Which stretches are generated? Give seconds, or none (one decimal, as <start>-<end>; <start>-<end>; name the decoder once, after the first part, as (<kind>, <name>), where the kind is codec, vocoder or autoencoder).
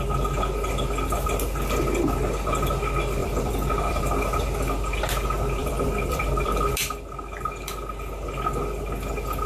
3.2-4.0 (vocoder, BigVGAN v2); 5.6-6.7